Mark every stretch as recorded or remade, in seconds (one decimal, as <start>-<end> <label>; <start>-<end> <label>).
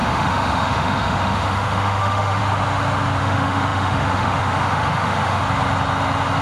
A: 0.0-2.4 remade; 2.4-3.2 recorded; 3.2-5.4 remade; 5.4-6.4 recorded